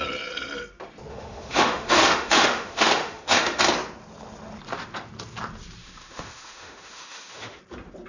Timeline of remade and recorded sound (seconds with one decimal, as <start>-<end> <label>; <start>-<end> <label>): 0.0-1.1 recorded; 1.1-3.6 remade; 3.6-5.8 recorded; 5.8-7.6 remade; 7.6-8.1 recorded